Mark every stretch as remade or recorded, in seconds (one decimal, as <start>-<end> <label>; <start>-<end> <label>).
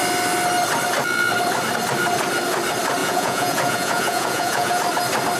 0.0-3.0 recorded; 3.0-4.8 remade; 4.8-5.4 recorded